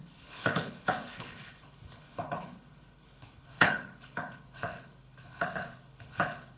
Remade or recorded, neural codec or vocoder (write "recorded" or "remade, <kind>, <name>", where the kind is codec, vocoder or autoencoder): remade, codec, HILCodec